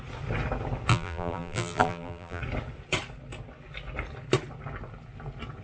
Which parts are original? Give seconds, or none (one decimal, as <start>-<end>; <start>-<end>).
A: 0.0-0.9; 2.4-5.6